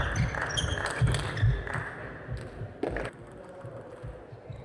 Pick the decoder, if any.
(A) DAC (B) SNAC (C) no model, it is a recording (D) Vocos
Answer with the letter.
C